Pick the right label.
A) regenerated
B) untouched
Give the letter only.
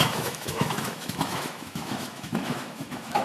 A